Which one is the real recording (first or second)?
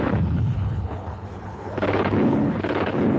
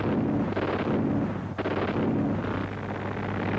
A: second